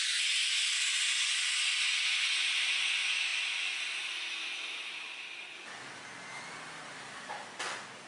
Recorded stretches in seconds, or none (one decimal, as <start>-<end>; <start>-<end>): 0.0-8.1